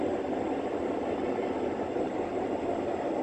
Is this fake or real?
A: real